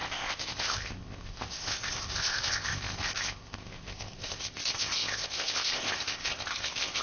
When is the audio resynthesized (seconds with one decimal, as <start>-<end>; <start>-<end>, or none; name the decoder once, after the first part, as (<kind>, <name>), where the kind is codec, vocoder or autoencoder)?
0.0-7.0 (codec, ZipCodec)